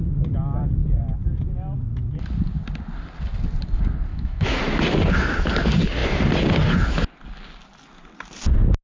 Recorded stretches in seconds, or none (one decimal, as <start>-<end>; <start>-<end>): 0.0-4.1; 4.6-8.8